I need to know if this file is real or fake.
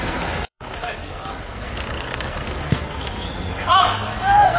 fake